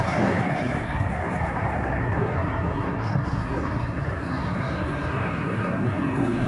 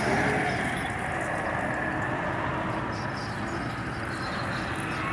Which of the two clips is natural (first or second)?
second